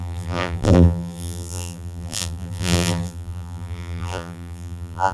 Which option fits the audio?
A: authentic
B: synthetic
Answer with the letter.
B